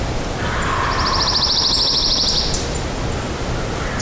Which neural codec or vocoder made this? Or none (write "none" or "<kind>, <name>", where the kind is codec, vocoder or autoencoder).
none